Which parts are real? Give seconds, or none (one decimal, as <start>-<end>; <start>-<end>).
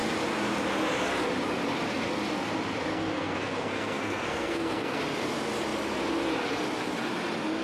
0.0-2.9; 5.0-7.6